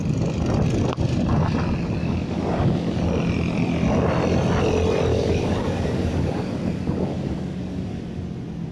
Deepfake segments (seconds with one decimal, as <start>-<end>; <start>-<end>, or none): 2.0-3.0; 5.1-8.0